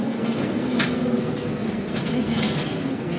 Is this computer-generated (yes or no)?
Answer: yes